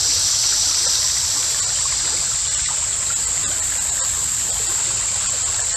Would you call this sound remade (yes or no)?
no